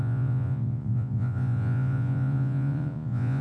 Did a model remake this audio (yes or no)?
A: yes